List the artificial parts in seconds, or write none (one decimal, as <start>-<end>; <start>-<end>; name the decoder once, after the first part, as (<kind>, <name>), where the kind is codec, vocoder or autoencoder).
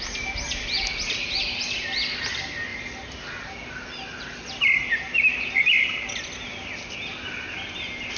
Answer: 2.7-6.7 (vocoder, BigVGAN v2)